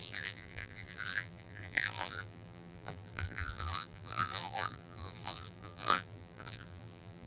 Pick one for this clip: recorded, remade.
remade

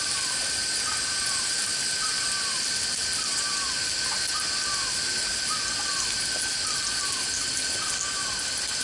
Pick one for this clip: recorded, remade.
recorded